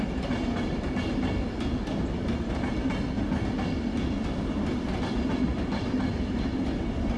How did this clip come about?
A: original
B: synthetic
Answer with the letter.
A